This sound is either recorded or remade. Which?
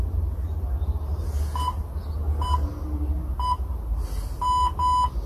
recorded